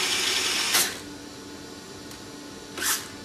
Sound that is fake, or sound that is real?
real